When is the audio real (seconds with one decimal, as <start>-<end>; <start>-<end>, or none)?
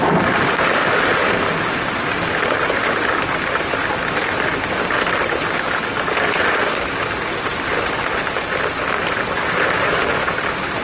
0.0-10.8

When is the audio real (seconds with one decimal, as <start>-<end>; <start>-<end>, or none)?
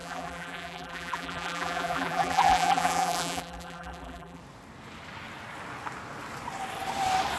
4.4-7.4